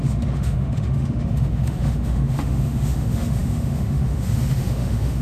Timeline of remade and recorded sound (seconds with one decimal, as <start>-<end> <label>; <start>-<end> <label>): 0.0-5.2 remade